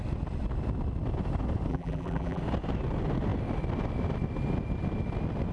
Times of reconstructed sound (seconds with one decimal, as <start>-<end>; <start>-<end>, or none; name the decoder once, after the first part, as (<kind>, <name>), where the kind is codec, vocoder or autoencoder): 1.7-2.4 (vocoder, BigVGAN v2)